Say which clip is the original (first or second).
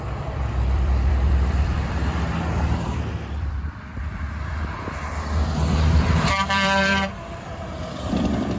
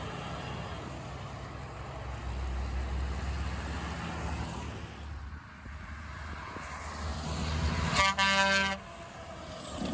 second